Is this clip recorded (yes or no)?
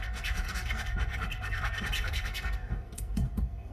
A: no